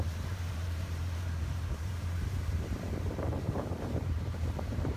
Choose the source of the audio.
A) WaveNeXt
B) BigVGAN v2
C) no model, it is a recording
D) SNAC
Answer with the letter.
B